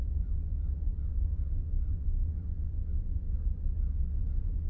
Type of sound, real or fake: fake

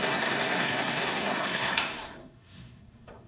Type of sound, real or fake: fake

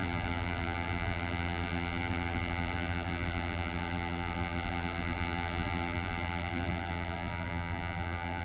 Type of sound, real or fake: fake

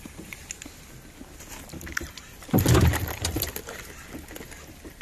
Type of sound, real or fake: real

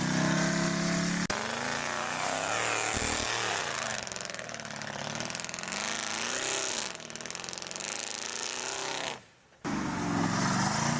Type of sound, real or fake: real